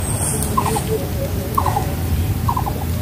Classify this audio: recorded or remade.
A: recorded